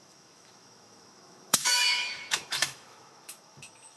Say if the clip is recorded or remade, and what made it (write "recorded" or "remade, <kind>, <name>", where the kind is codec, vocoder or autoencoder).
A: remade, autoencoder, DAC-VAE